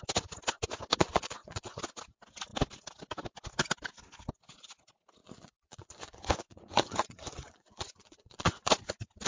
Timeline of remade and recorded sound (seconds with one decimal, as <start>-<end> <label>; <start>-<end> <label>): 0.0-0.9 recorded; 0.9-1.8 remade; 1.8-5.2 recorded; 5.2-8.7 remade; 8.7-9.3 recorded

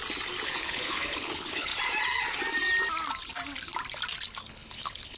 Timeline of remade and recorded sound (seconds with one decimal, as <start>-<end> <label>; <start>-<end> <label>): 0.0-0.6 recorded; 0.6-1.7 remade; 1.7-4.4 recorded; 4.4-5.2 remade

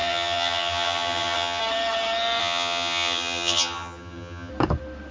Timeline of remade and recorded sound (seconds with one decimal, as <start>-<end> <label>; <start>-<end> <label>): 0.0-1.6 remade; 1.6-2.4 recorded; 2.4-4.5 remade; 4.5-5.1 recorded

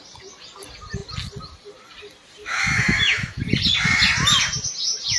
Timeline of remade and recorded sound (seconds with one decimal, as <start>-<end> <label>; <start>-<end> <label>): 0.0-2.4 recorded; 2.4-3.4 remade; 3.4-5.2 recorded